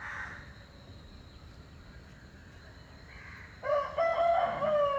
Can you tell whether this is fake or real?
real